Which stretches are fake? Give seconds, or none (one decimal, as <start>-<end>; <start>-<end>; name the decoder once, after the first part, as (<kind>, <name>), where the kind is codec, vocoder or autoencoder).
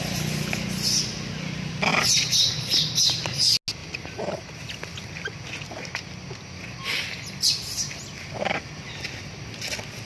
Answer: none